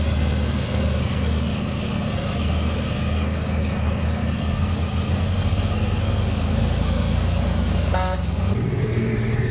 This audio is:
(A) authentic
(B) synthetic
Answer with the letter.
B